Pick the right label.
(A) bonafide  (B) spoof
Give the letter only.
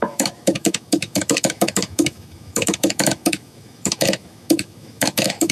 B